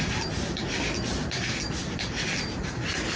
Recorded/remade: recorded